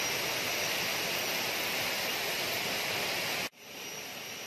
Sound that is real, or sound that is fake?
real